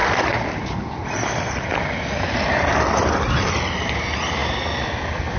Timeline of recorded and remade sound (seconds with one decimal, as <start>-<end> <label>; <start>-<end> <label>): 0.0-3.2 remade; 3.2-5.4 recorded